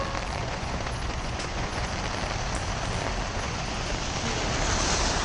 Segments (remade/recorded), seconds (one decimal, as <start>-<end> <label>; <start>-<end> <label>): 0.0-0.4 recorded; 0.4-1.9 remade; 1.9-3.3 recorded; 3.3-3.9 remade; 3.9-5.2 recorded

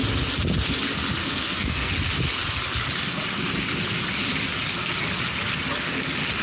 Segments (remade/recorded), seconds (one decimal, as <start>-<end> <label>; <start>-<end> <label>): 0.0-1.2 recorded; 1.2-1.9 remade; 1.9-6.4 recorded

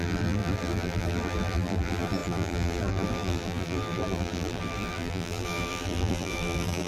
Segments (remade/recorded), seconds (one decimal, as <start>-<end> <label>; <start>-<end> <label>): 0.0-6.9 remade

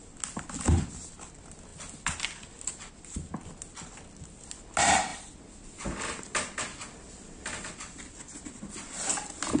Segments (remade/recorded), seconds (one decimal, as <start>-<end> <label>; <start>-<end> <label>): 0.0-9.6 recorded

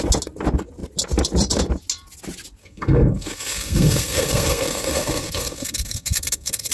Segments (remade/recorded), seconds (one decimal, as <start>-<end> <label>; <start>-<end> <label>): 0.0-2.6 recorded; 2.6-6.7 remade